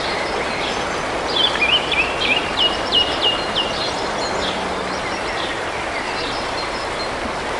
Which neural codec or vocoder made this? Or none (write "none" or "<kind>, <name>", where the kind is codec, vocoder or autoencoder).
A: none